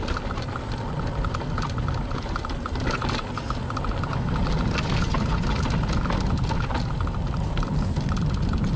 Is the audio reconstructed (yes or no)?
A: no